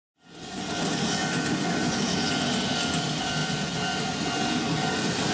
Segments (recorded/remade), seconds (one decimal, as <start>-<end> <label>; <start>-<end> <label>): 0.0-5.3 recorded